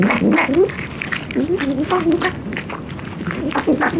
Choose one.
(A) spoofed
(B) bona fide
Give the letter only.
B